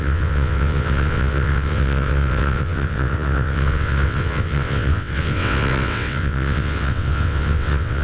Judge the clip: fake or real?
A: fake